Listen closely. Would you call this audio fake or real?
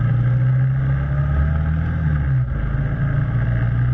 real